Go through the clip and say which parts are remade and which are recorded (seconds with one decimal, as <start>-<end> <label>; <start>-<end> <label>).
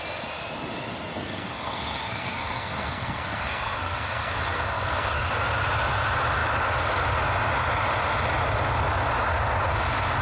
0.0-1.1 recorded; 1.1-5.3 remade; 5.3-10.2 recorded